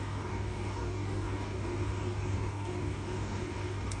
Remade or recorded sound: remade